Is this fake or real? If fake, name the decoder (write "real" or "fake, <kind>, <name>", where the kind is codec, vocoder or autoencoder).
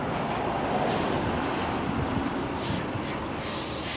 real